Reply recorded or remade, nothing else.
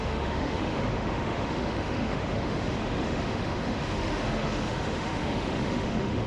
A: remade